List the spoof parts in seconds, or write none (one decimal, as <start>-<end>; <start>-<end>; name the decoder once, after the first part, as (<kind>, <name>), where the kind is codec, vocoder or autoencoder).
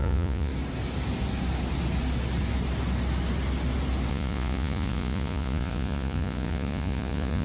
0.0-0.5 (vocoder, Vocos); 4.1-7.4